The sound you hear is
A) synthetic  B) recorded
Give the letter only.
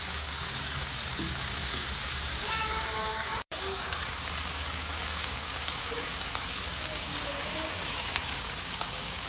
A